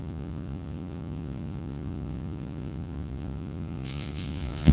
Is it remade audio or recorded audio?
remade